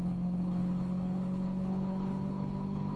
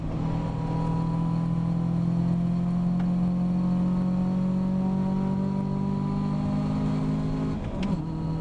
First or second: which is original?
second